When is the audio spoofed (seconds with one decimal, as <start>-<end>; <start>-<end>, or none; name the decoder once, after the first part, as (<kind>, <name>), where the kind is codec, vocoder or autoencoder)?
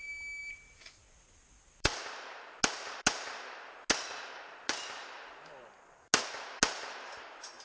0.4-2.0 (vocoder, BigVGAN v2)